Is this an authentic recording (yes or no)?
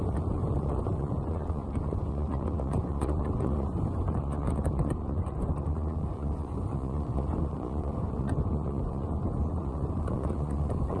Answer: no